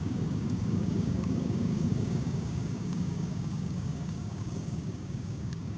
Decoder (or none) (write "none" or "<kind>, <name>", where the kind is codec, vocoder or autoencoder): codec, DAC